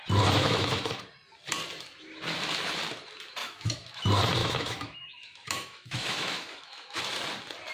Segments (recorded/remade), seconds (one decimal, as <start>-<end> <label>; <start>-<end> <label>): 0.0-0.4 recorded; 0.4-1.0 remade; 1.0-3.4 recorded; 3.4-4.0 remade; 4.0-4.4 recorded; 4.4-7.0 remade; 7.0-7.7 recorded